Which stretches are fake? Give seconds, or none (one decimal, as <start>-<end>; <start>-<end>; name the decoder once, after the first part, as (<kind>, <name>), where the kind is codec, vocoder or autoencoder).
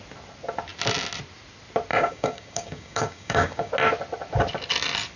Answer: 1.9-3.7 (codec, DAC)